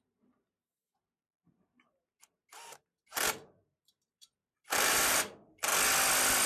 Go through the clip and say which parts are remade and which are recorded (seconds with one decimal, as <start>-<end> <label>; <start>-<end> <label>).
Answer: 0.0-2.4 remade; 2.4-3.3 recorded; 3.3-5.7 remade; 5.7-6.5 recorded